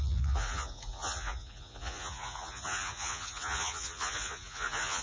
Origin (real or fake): fake